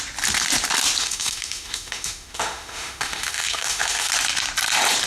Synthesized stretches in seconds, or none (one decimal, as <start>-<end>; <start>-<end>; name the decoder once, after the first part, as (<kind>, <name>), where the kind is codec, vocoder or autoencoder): 1.0-4.1 (autoencoder, DAC-VAE)